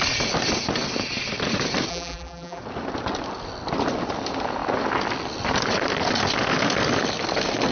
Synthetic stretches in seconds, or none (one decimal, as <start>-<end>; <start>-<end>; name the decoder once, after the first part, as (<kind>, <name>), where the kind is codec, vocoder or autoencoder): 1.9-2.6 (vocoder, BigVGAN v2)